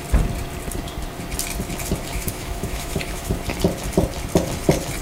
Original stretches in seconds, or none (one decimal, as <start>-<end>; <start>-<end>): 0.0-2.1; 3.4-5.0